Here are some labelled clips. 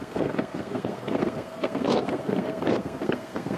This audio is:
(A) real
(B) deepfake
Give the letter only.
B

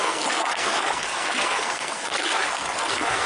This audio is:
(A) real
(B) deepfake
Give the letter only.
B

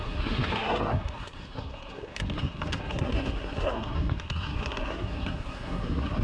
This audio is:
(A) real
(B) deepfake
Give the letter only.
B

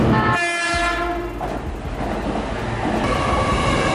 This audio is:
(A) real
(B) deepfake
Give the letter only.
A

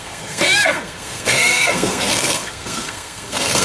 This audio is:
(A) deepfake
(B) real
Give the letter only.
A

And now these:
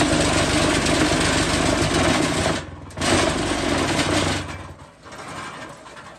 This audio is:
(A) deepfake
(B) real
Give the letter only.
B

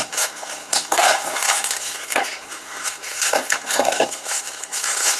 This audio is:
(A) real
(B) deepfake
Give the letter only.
B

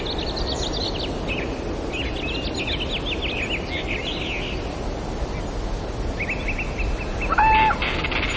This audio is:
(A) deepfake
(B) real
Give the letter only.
B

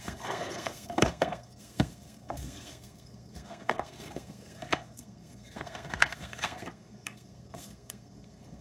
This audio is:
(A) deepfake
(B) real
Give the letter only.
A